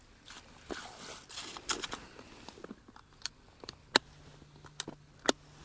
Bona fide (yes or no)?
yes